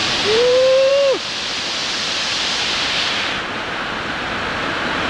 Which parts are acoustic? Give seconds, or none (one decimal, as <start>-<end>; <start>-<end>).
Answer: 0.9-1.8; 2.9-5.1

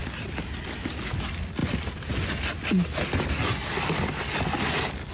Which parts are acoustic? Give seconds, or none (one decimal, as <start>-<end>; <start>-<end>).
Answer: 0.6-5.1

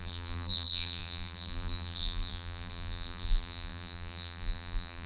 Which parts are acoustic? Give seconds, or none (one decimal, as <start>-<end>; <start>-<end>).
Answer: none

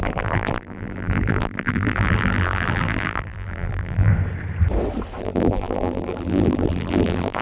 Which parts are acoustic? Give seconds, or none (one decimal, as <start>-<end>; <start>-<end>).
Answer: 4.1-5.2

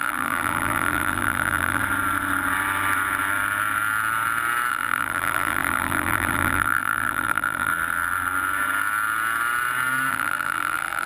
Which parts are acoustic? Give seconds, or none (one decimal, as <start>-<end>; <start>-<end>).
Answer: 1.8-4.7; 7.7-10.1

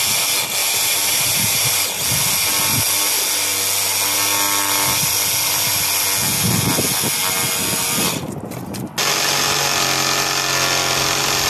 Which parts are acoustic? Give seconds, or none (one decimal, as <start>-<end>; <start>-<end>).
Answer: 0.0-0.6; 1.8-11.5